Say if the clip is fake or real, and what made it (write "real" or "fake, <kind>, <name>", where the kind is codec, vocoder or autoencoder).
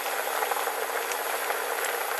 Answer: real